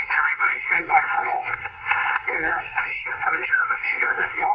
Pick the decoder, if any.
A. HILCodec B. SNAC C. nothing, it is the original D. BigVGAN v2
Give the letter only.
B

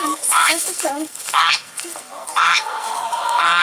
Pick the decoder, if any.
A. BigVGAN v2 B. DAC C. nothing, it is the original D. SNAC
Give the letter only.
D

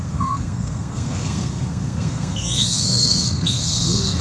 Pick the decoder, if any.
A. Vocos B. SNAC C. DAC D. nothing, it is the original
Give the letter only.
B